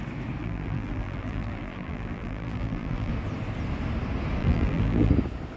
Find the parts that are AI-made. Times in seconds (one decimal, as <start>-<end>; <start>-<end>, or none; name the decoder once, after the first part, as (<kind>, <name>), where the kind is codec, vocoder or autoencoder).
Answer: 0.4-3.1 (vocoder, BigVGAN v2); 4.4-5.1